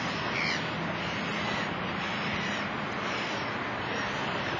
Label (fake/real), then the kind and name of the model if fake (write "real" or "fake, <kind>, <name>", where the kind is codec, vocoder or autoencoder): real